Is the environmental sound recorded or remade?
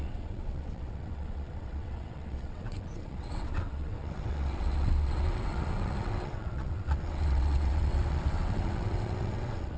remade